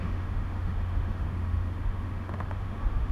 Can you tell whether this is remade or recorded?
remade